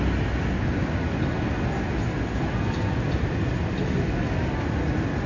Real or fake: real